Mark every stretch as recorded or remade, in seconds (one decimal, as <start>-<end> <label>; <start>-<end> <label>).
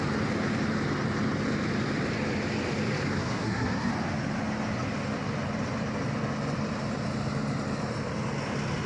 0.0-3.2 recorded; 3.2-3.9 remade; 3.9-8.9 recorded